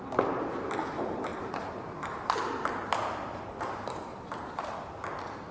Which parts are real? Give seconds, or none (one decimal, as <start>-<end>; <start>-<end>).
0.0-1.3; 4.6-5.5